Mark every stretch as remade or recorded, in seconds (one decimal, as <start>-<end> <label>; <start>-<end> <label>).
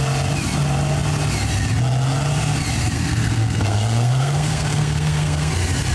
0.0-2.8 recorded; 2.8-5.5 remade; 5.5-5.9 recorded